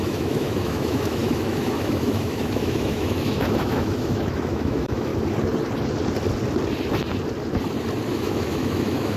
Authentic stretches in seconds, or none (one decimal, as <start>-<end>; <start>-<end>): 5.1-8.1